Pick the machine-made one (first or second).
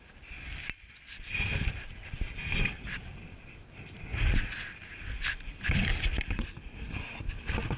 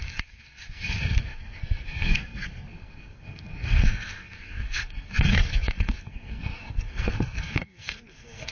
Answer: second